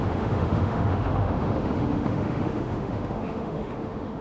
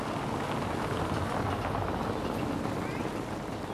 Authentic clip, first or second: second